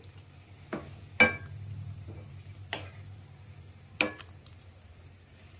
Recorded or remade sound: recorded